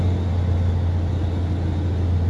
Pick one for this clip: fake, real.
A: real